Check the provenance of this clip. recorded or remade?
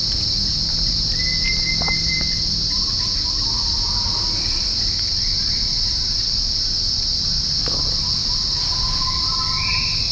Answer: recorded